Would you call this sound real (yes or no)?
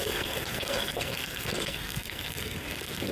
no